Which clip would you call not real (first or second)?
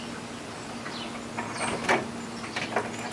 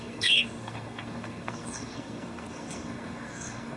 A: second